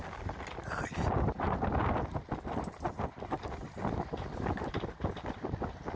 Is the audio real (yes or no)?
yes